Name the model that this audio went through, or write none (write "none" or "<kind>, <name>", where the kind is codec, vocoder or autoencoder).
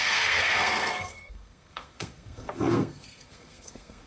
codec, SNAC